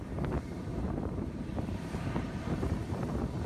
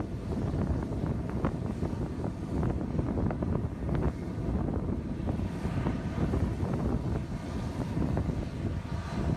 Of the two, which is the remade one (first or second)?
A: first